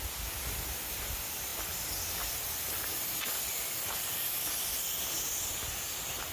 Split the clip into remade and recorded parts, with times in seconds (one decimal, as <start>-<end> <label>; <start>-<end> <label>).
0.0-6.3 recorded